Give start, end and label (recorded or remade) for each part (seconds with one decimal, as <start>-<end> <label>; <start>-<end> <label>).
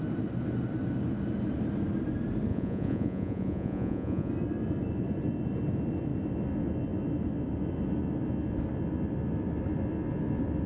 0.0-2.5 recorded; 2.5-4.3 remade; 4.3-10.7 recorded